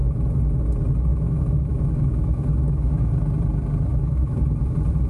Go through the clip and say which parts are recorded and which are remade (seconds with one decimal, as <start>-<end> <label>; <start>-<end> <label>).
0.0-1.1 recorded; 1.1-3.1 remade; 3.1-3.9 recorded; 3.9-4.4 remade; 4.4-5.1 recorded